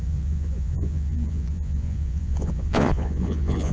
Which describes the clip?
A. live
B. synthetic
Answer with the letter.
B